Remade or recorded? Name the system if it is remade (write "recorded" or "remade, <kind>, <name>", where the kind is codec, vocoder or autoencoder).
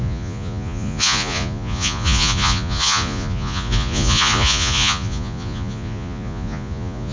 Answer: remade, vocoder, Vocos